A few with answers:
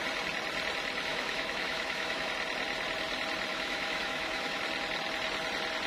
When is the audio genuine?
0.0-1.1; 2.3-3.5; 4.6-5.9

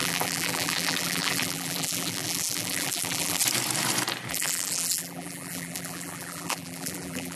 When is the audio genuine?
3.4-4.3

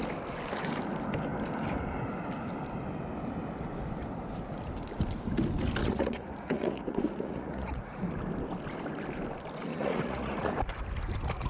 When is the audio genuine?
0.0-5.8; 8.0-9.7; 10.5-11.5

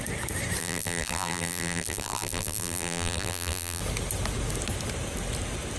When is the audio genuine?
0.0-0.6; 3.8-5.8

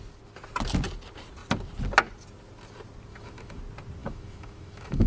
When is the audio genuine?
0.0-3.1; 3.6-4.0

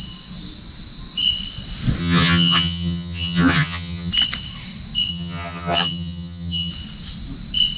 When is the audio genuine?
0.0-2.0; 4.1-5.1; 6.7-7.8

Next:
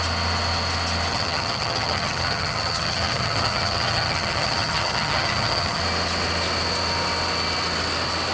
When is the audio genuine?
0.0-1.1; 5.8-8.3

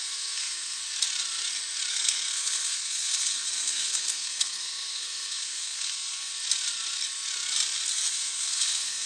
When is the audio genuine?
0.8-1.9; 6.3-8.1